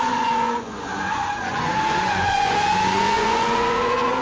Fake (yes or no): yes